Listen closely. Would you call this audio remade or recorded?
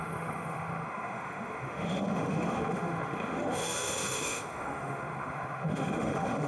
remade